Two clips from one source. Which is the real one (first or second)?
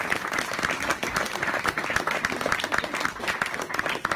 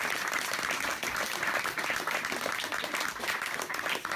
first